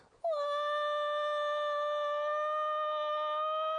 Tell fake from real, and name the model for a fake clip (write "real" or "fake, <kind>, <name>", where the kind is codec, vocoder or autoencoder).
real